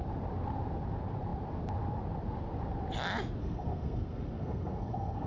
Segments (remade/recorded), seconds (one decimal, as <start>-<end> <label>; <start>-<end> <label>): 0.0-3.4 recorded; 3.4-5.3 remade